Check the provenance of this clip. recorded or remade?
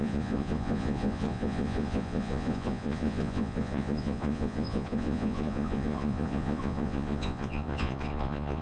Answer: remade